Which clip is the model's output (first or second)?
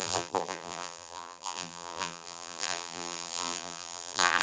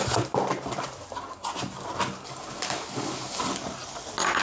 first